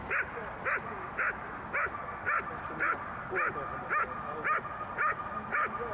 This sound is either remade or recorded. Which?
recorded